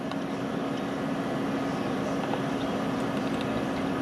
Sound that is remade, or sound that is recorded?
recorded